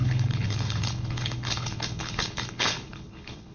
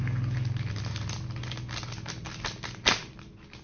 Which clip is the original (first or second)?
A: second